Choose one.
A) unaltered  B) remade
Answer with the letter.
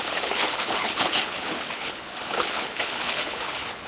B